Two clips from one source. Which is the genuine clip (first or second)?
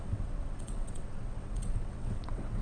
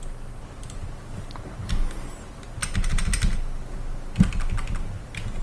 second